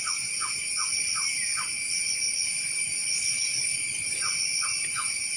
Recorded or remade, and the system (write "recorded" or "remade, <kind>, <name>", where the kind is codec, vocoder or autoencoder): recorded